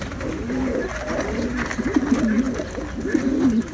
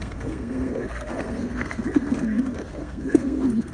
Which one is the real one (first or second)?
first